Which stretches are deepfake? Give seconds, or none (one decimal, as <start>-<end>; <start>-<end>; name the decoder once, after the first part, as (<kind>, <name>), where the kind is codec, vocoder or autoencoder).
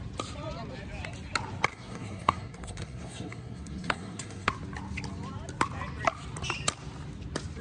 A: 1.7-4.5 (codec, SNAC)